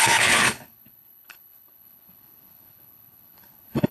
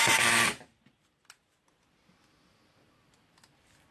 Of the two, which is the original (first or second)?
second